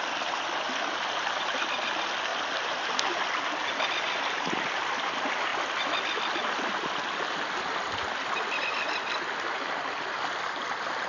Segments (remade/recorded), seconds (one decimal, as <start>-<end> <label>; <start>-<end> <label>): 0.0-11.1 recorded